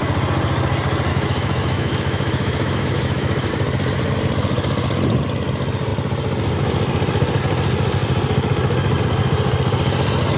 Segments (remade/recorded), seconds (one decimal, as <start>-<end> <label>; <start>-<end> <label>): 0.0-1.1 recorded; 1.1-3.5 remade; 3.5-10.4 recorded